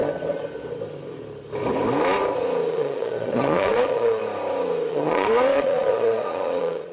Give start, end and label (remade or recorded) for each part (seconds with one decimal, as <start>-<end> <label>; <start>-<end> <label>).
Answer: 0.0-2.7 recorded; 2.7-4.2 remade; 4.2-4.9 recorded; 4.9-6.9 remade